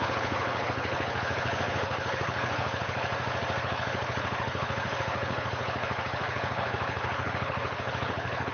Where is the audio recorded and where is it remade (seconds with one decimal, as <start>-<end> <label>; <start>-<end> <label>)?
0.0-3.1 remade; 3.1-3.6 recorded; 3.6-8.5 remade